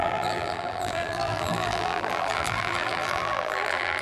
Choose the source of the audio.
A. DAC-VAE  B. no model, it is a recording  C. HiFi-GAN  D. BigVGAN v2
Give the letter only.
D